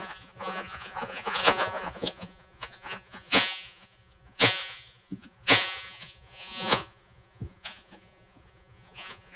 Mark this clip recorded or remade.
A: remade